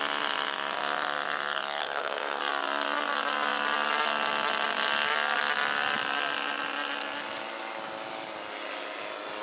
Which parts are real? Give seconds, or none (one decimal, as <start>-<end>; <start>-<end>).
0.0-1.8; 2.4-9.4